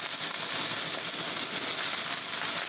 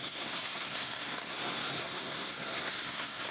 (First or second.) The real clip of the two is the first